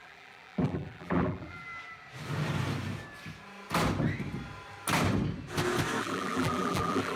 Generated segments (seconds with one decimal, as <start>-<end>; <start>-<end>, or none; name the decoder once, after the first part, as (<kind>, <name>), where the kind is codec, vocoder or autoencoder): 0.0-1.7 (vocoder, BigVGAN v2); 6.0-7.2